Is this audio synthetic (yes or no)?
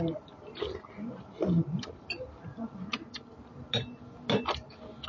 no